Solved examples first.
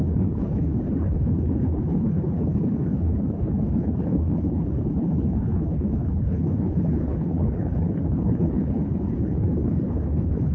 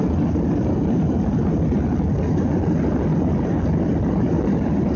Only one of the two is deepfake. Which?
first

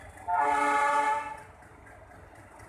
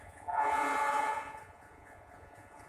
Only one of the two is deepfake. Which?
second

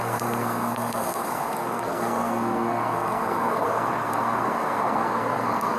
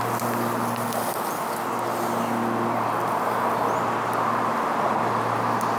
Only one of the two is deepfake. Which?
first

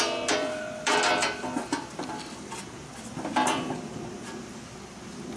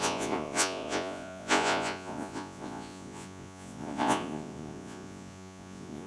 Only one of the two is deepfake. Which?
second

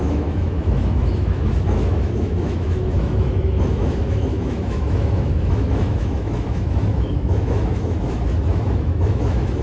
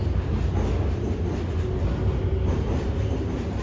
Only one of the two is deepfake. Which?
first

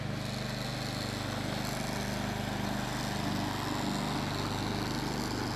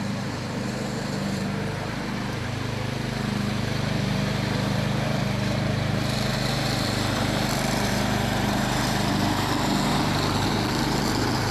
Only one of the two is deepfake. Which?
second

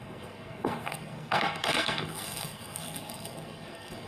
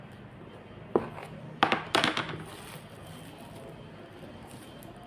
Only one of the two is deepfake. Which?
first